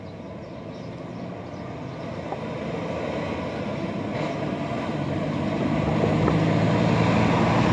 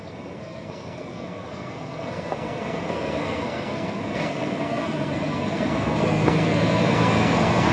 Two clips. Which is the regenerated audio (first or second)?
second